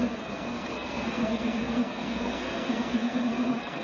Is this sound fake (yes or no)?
yes